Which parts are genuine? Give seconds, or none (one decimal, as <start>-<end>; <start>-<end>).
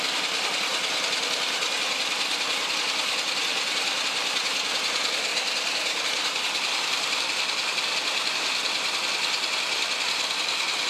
0.0-5.3; 7.2-10.9